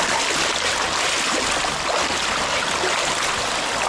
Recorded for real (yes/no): yes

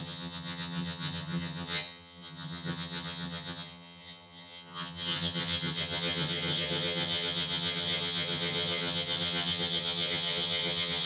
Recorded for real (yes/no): no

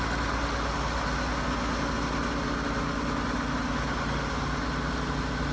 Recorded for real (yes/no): yes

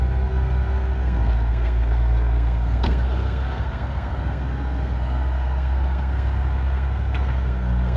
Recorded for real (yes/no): no